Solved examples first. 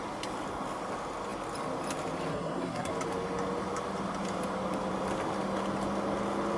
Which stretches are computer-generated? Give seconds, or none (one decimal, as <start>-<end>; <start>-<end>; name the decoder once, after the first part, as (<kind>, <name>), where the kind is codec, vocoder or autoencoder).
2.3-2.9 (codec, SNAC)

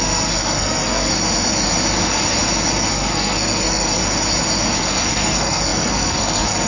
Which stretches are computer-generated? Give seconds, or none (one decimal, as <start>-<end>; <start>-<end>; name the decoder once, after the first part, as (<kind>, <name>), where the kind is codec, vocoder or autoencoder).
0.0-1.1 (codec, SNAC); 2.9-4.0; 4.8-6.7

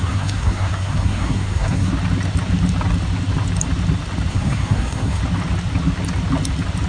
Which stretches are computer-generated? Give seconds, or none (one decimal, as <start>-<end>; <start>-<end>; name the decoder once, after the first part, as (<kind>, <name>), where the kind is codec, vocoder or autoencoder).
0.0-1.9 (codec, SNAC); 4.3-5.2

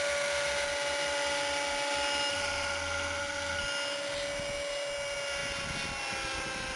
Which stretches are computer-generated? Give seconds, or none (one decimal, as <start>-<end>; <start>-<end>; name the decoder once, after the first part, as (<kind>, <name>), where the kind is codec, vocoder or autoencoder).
2.3-3.6 (codec, SNAC)